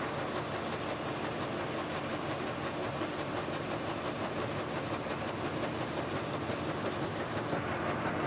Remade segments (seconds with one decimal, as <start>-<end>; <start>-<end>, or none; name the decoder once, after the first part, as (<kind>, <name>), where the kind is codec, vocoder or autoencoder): 2.8-7.3 (vocoder, BigVGAN v2)